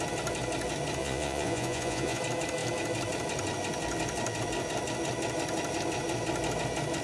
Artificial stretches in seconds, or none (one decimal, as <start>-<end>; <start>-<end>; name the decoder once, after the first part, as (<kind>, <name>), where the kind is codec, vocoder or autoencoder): 1.0-2.2 (vocoder, Vocos)